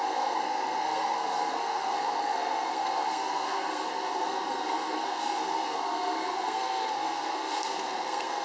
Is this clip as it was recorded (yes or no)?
no